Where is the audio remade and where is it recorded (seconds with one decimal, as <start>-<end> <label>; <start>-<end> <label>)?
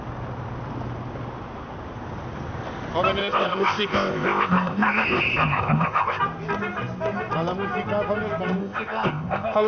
0.0-3.2 recorded; 3.2-6.2 remade; 6.2-8.6 recorded; 8.6-9.7 remade